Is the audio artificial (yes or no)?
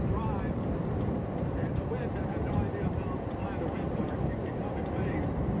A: yes